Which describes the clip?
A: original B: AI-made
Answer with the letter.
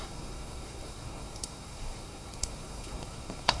B